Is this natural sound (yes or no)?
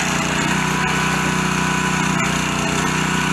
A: yes